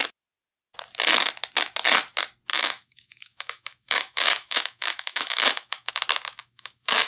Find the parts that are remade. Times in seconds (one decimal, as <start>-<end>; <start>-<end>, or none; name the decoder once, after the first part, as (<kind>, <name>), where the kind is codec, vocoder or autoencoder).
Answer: 2.5-5.9 (autoencoder, DAC-VAE); 6.4-7.1